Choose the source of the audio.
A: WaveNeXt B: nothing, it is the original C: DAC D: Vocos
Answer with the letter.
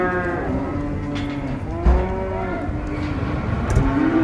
B